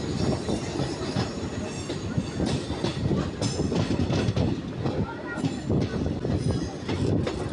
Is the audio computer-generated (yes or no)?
no